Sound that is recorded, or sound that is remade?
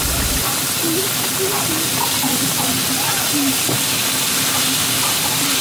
recorded